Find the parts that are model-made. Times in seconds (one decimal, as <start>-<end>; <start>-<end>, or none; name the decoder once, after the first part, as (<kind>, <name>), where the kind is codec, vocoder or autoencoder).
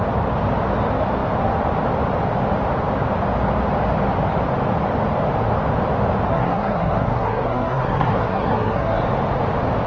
6.3-9.0 (codec, SNAC)